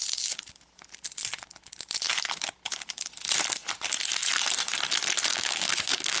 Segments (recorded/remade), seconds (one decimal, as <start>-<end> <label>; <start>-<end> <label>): 0.0-5.3 recorded; 5.3-6.2 remade